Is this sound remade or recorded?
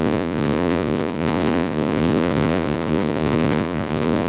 remade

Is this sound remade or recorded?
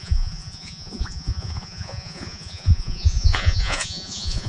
remade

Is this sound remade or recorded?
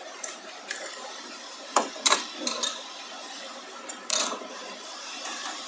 remade